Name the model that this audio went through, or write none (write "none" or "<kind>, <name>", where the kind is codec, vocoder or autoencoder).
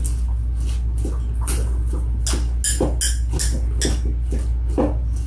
none